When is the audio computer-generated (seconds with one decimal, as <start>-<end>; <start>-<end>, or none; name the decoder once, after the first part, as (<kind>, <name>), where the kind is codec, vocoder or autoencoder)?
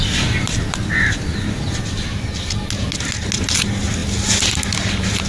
none